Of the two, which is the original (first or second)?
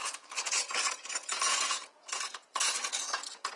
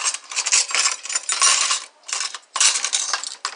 second